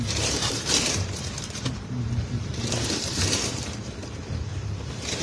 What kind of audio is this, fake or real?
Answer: fake